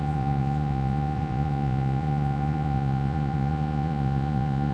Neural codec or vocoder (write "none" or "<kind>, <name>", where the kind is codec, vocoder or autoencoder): vocoder, Vocos